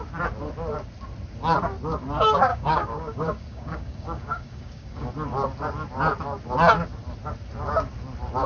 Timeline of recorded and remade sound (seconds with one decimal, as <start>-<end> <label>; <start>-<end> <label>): 0.0-2.5 recorded; 2.5-5.1 remade; 5.1-8.5 recorded